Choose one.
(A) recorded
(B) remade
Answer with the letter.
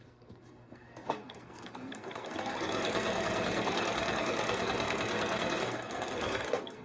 B